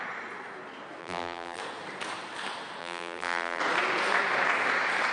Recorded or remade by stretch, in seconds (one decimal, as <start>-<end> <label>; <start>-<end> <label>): 0.0-1.0 recorded; 1.0-1.6 remade; 1.6-2.8 recorded; 2.8-3.6 remade; 3.6-5.1 recorded